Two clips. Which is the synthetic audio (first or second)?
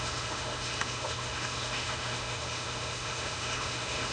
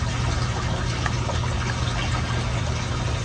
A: first